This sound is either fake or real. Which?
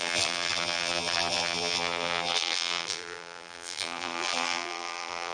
fake